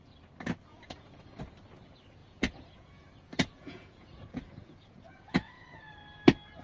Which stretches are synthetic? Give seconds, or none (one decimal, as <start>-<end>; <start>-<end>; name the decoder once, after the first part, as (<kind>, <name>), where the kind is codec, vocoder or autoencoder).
0.7-1.4 (vocoder, Vocos); 2.2-5.8